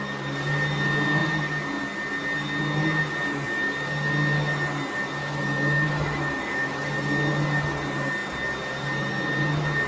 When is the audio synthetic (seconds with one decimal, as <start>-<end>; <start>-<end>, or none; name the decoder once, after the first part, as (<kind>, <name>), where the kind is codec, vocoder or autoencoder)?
5.2-6.9 (autoencoder, DAC-VAE)